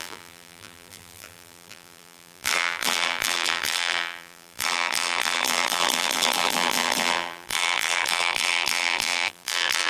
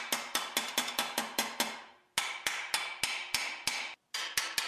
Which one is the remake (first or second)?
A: first